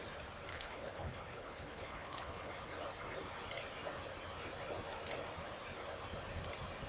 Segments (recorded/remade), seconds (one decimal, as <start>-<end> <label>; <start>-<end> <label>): 0.0-0.5 recorded; 0.5-2.5 remade; 2.5-6.9 recorded

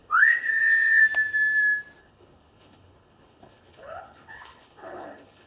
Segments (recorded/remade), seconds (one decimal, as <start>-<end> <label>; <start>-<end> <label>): 0.0-1.0 remade; 1.0-2.0 recorded; 2.0-5.5 remade

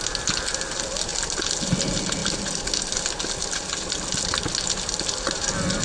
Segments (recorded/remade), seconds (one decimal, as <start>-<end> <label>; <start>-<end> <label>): 0.0-5.8 recorded

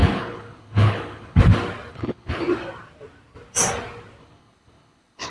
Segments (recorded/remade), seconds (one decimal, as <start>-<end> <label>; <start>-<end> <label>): 0.0-1.4 remade; 1.4-1.9 recorded; 1.9-2.4 remade; 2.4-4.2 recorded; 4.2-5.3 remade

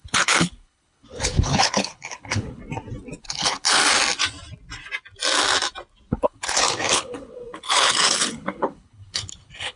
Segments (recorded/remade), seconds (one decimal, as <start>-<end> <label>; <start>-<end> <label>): 0.0-2.6 remade; 2.6-3.2 recorded; 3.2-3.8 remade; 3.8-6.1 recorded; 6.1-9.8 remade

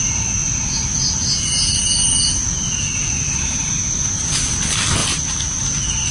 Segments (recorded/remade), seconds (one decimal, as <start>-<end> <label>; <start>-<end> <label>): 0.0-6.1 recorded